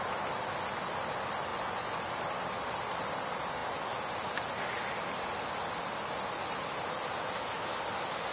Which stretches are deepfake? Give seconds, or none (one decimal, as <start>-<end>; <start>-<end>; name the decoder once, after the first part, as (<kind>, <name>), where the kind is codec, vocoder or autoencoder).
1.5-2.0 (vocoder, Vocos)